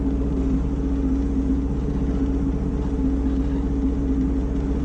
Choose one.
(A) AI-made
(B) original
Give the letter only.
B